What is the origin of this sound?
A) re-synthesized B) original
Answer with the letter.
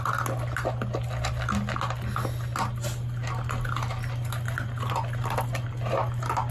B